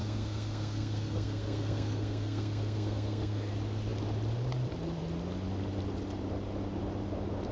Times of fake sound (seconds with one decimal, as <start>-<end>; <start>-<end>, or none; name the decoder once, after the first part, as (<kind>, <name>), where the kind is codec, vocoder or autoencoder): 0.0-3.5 (codec, SNAC)